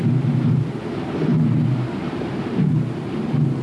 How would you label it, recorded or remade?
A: remade